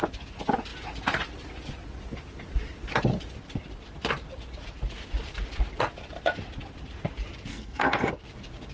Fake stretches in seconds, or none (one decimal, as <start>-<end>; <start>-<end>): 7.5-8.1